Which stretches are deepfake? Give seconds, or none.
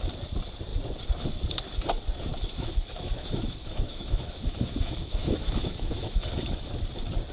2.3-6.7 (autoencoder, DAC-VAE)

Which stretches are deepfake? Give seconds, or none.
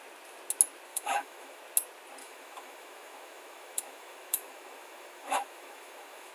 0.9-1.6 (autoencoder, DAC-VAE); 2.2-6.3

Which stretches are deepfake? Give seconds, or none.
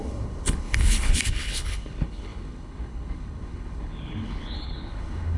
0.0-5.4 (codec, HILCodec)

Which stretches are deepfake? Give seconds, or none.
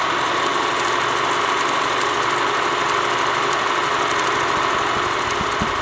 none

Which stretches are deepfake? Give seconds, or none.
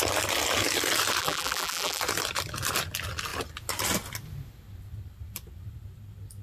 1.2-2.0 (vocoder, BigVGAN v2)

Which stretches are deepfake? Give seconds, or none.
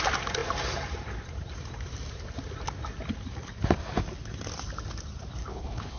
5.4-6.0 (codec, HILCodec)